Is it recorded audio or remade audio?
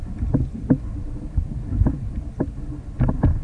recorded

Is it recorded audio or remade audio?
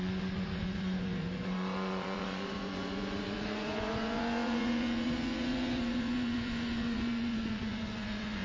remade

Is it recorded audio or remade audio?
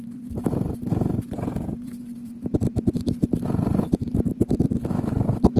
remade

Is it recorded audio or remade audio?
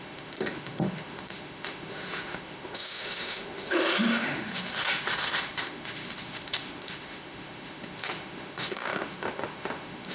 remade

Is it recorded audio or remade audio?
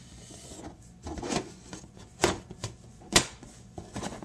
remade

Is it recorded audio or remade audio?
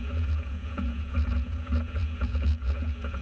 remade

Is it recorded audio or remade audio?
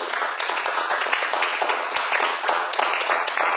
remade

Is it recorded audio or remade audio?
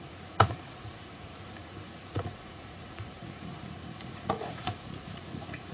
remade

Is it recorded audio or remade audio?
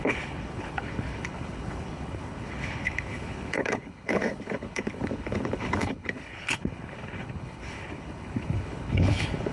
remade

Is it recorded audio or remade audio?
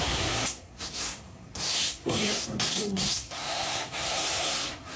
remade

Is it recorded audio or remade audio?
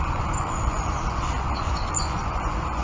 remade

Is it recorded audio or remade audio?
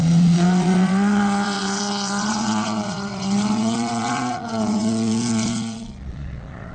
remade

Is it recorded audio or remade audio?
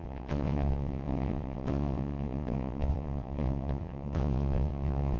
remade